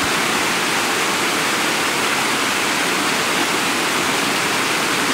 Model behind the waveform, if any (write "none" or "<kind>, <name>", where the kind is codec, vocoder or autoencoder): none